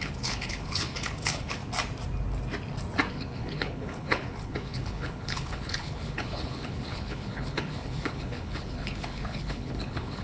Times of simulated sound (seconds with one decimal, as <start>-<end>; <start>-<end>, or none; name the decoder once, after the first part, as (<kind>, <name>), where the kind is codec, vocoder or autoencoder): 0.0-1.6 (codec, HILCodec); 3.1-10.2

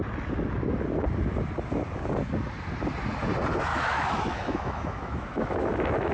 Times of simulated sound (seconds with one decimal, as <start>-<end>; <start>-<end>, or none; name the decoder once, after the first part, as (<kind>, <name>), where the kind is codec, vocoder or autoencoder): 3.7-6.1 (autoencoder, DAC-VAE)

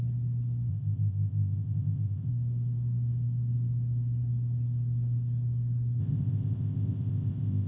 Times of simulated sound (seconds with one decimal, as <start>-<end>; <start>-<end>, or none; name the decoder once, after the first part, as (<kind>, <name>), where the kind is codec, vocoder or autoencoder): 0.7-2.3 (codec, ZipCodec); 6.0-7.7

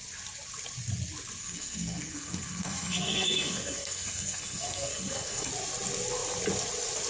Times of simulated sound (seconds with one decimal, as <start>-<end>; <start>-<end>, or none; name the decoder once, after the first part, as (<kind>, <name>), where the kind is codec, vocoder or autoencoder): 1.4-5.5 (codec, SNAC)

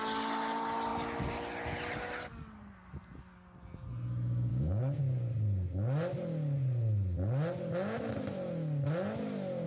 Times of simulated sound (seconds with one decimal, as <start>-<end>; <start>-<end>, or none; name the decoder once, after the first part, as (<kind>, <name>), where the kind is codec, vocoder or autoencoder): 4.5-5.0 (codec, DAC)

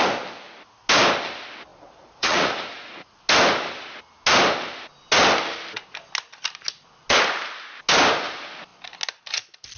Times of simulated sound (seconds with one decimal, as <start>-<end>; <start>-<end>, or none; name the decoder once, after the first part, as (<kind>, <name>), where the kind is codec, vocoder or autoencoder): 1.7-3.2 (vocoder, Vocos)

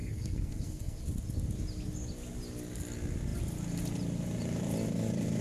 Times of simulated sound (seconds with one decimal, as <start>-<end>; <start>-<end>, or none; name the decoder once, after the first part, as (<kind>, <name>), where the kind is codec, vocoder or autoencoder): 0.0-1.0 (codec, SNAC)

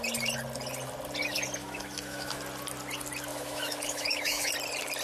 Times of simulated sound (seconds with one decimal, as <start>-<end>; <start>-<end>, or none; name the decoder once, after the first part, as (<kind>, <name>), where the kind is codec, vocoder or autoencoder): 1.6-2.4 (autoencoder, DAC-VAE); 3.3-4.5